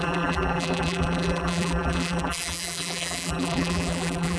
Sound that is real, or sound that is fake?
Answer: fake